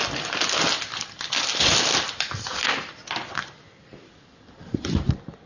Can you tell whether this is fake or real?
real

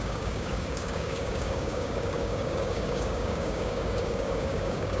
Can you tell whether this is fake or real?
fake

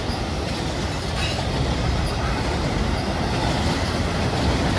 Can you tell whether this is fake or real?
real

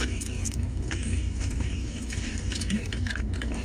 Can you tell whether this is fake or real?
fake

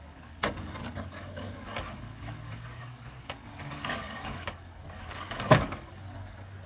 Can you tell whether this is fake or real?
fake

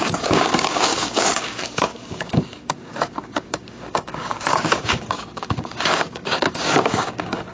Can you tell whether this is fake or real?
fake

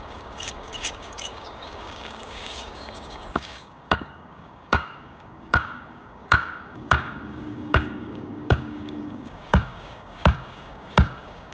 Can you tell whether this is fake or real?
fake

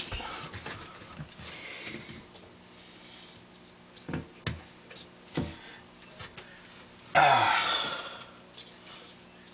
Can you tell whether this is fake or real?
real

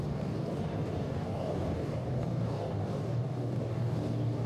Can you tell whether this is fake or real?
fake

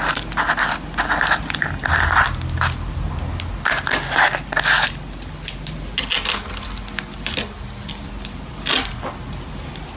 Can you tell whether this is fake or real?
real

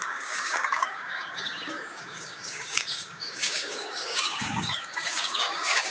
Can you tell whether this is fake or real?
fake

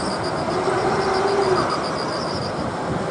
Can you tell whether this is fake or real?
real